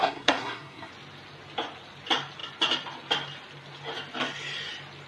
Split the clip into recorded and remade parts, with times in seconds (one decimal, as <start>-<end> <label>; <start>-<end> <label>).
0.0-0.9 remade; 0.9-5.1 recorded